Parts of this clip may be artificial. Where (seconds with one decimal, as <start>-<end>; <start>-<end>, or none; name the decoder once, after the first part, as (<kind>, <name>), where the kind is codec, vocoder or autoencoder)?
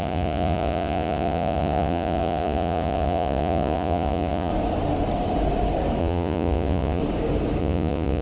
0.0-4.5 (vocoder, Vocos); 6.0-7.0; 7.6-8.2